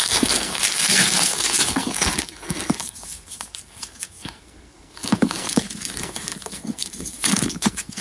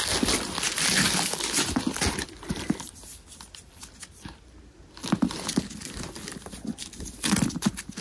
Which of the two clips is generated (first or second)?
first